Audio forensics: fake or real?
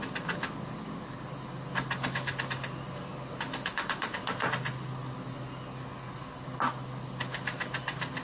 real